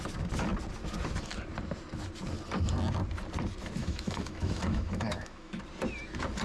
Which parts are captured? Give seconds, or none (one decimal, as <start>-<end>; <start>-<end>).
0.0-3.8; 5.6-6.4